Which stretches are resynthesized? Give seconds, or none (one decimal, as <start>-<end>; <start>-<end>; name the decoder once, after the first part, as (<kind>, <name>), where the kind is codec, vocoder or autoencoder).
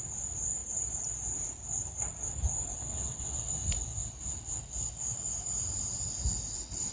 2.9-3.5 (vocoder, WaveNeXt)